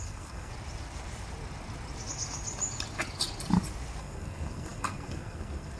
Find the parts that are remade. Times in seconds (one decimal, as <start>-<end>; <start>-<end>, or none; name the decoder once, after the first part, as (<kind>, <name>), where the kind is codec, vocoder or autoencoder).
0.0-0.5 (codec, SNAC); 4.0-5.8